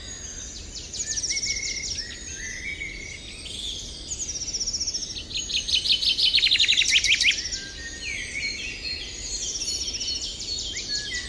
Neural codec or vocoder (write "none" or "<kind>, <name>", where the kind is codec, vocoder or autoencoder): none